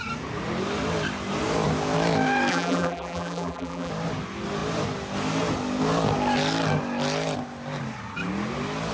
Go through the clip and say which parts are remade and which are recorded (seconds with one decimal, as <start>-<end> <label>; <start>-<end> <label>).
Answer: 0.0-2.5 recorded; 2.5-3.9 remade; 3.9-8.9 recorded

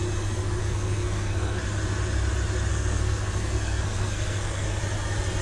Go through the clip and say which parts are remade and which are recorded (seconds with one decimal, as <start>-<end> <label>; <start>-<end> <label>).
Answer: 0.0-0.6 recorded; 0.6-1.6 remade; 1.6-2.7 recorded; 2.7-4.8 remade; 4.8-5.4 recorded

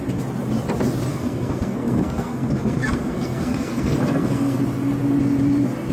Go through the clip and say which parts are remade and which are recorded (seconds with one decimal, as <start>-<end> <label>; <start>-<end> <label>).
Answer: 0.0-1.1 recorded; 1.1-4.6 remade; 4.6-5.9 recorded

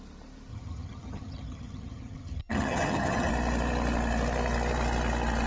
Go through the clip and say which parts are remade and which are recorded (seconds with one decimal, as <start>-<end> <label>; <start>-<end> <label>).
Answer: 0.0-0.5 recorded; 0.5-3.3 remade; 3.3-5.5 recorded

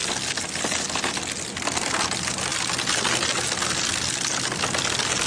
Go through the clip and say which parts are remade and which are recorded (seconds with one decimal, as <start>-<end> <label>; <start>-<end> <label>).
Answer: 0.0-5.3 recorded